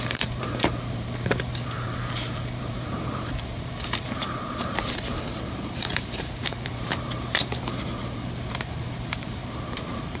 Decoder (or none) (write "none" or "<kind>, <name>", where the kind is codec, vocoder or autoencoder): vocoder, BigVGAN v2